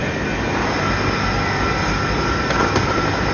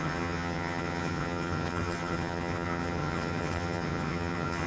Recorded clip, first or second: first